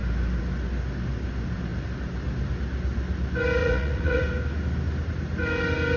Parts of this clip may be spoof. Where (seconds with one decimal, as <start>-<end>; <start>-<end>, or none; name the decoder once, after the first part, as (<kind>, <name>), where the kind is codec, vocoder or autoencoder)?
3.6-4.2 (vocoder, Vocos)